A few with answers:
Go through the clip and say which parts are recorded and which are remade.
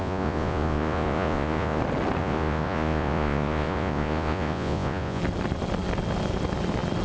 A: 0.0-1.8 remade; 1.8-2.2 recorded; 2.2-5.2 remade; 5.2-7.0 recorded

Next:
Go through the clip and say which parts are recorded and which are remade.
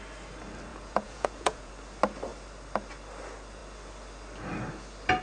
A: 0.0-0.7 recorded; 0.7-1.7 remade; 1.7-5.2 recorded